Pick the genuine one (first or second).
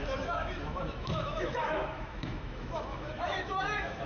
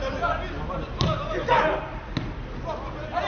second